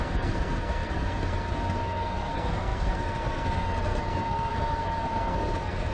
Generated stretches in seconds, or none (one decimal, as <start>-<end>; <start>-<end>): 0.0-5.9